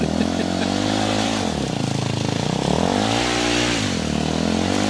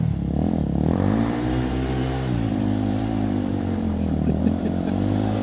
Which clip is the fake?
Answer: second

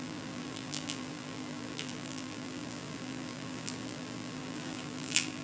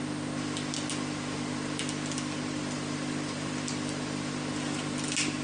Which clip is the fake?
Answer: first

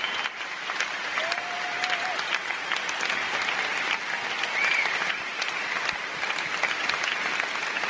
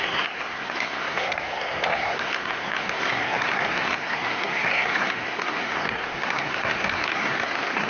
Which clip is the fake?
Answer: second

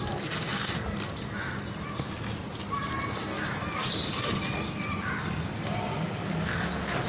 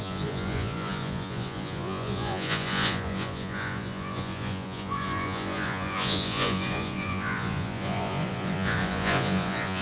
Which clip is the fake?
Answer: second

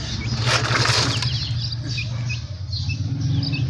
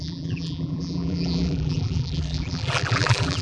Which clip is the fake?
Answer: second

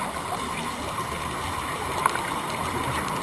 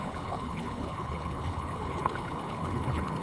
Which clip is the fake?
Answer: second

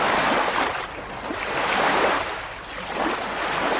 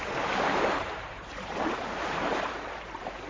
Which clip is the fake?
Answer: second